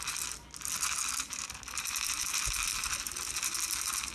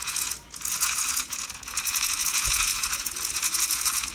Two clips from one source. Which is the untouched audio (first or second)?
first